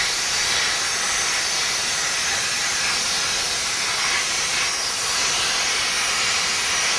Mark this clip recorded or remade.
recorded